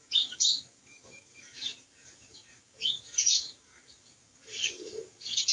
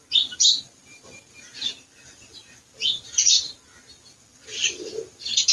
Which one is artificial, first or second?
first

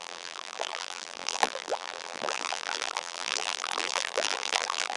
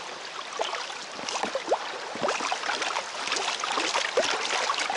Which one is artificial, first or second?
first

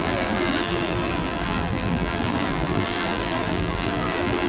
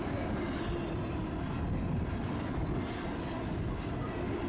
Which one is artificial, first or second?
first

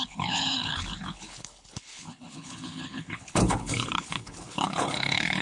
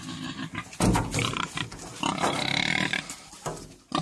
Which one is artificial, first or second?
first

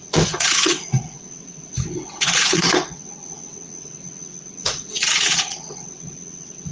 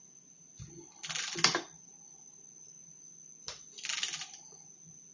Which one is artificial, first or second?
first